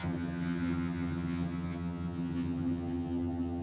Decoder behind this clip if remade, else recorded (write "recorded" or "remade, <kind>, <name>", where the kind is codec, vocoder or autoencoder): remade, vocoder, HiFi-GAN